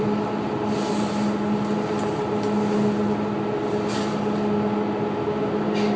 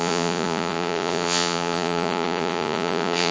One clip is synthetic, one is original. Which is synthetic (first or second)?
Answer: second